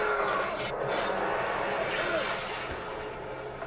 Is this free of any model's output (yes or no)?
yes